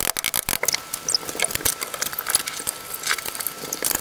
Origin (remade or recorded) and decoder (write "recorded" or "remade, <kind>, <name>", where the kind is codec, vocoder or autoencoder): recorded